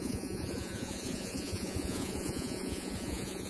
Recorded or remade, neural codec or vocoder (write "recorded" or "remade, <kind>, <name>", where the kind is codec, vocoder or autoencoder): remade, vocoder, Vocos